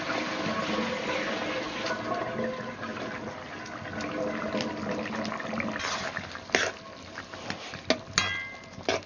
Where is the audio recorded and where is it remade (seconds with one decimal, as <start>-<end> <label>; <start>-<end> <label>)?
0.0-9.1 recorded